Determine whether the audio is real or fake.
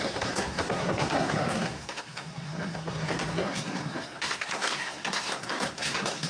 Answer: fake